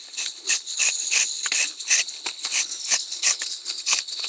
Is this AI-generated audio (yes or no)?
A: yes